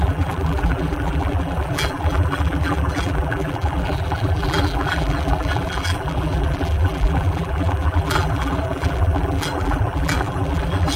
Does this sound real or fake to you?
fake